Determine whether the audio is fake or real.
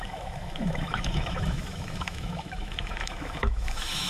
fake